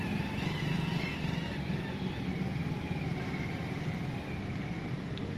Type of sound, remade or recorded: recorded